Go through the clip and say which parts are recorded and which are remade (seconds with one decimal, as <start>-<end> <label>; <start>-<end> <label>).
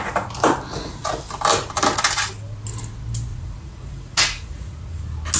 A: 0.0-3.3 recorded; 3.3-5.0 remade; 5.0-5.4 recorded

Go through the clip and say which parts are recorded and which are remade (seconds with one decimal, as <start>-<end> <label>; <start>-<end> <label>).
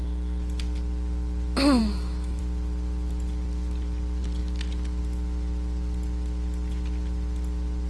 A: 0.0-1.8 recorded; 1.8-2.4 remade; 2.4-7.9 recorded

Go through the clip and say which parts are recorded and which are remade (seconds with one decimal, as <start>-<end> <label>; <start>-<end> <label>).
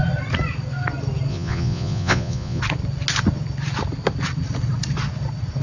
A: 0.0-1.3 recorded; 1.3-2.6 remade; 2.6-5.6 recorded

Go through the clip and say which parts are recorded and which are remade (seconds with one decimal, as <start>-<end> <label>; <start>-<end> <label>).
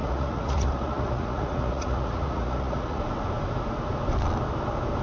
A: 0.0-3.0 remade; 3.0-5.0 recorded